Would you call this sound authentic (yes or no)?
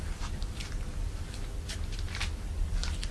yes